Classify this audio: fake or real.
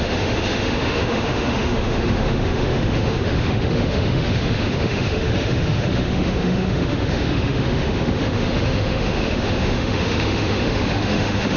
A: fake